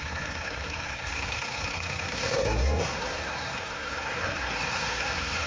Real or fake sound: fake